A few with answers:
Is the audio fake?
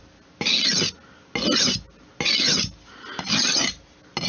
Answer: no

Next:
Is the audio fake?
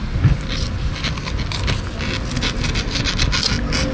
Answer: no